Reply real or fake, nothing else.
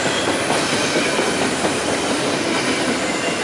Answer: fake